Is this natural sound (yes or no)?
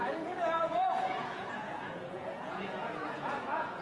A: no